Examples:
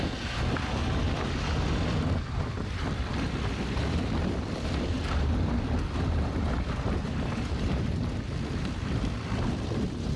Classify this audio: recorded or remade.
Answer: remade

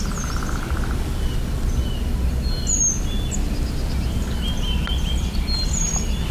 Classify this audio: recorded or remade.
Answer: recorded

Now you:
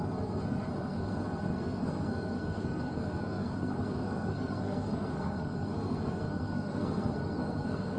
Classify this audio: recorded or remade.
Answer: remade